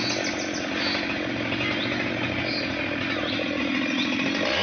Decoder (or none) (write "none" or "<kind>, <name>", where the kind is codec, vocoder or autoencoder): none